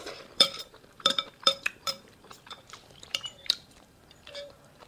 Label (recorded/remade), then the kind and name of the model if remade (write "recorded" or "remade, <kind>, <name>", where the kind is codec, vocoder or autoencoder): remade, vocoder, BigVGAN v2